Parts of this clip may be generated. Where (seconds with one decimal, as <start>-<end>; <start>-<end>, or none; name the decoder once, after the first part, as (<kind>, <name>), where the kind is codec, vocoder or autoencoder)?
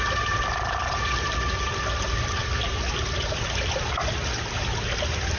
none